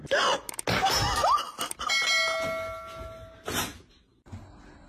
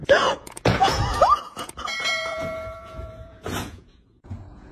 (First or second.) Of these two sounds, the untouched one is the first